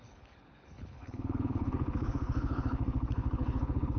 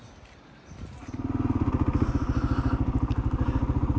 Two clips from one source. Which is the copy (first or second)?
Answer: first